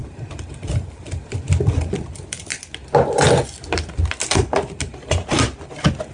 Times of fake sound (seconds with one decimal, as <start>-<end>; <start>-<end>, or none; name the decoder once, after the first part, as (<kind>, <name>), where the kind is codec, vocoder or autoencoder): none